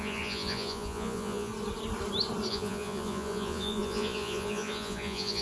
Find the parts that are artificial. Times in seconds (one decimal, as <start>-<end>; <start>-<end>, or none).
0.0-1.5; 2.5-5.4